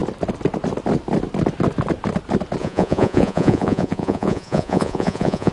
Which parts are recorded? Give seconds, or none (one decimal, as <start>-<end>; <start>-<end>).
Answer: 0.0-2.6